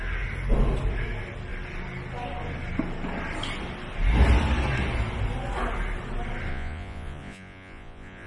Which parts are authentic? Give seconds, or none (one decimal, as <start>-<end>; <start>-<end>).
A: 0.0-6.5